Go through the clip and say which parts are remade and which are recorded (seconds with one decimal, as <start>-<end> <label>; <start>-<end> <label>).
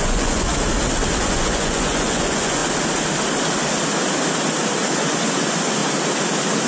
0.0-0.5 remade; 0.5-1.2 recorded; 1.2-2.6 remade; 2.6-4.9 recorded; 4.9-5.8 remade; 5.8-6.7 recorded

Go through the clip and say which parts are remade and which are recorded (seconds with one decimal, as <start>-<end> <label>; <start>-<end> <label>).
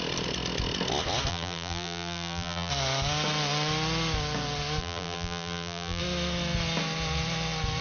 0.0-1.3 recorded; 1.3-2.7 remade; 2.7-4.8 recorded; 4.8-6.0 remade; 6.0-7.8 recorded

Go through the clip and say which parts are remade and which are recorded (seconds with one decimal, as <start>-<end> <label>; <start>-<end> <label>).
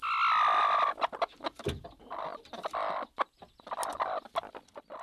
0.0-5.0 recorded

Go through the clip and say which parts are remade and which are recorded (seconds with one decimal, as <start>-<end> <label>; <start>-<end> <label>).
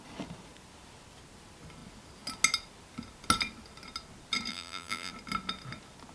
0.0-4.5 recorded; 4.5-5.1 remade; 5.1-6.1 recorded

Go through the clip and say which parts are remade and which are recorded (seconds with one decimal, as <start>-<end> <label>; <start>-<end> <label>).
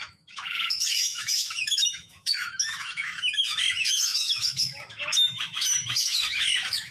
0.0-6.9 remade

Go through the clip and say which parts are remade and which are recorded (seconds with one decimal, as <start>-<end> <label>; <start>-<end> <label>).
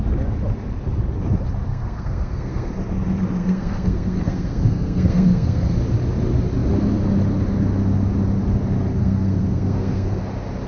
0.0-1.7 recorded; 1.7-2.7 remade; 2.7-3.4 recorded; 3.4-5.7 remade; 5.7-9.0 recorded; 9.0-10.2 remade; 10.2-10.7 recorded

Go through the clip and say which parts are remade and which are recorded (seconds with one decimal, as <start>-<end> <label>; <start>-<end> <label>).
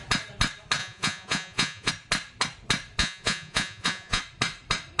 0.0-0.8 recorded; 0.8-1.9 remade; 1.9-3.0 recorded; 3.0-4.2 remade; 4.2-5.0 recorded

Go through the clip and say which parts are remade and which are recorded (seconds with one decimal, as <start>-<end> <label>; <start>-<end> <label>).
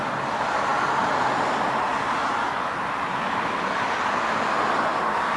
0.0-5.4 recorded